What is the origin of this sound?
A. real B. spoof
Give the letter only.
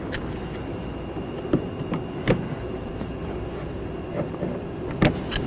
A